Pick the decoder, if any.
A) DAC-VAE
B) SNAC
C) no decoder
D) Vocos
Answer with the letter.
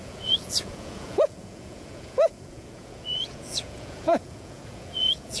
D